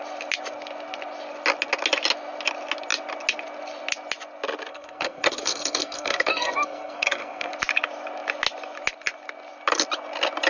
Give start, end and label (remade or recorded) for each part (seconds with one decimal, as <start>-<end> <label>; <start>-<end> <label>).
0.0-4.7 recorded; 4.7-7.5 remade; 7.5-10.5 recorded